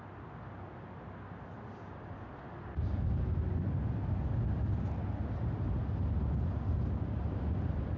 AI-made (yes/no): no